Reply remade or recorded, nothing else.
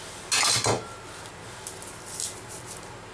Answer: recorded